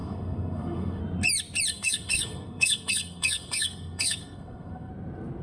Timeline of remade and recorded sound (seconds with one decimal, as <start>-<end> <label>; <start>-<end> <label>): 0.0-1.0 remade; 1.0-1.7 recorded; 1.7-4.9 remade; 4.9-5.4 recorded